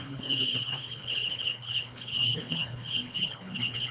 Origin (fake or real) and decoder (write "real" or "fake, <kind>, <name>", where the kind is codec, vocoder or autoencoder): fake, codec, HILCodec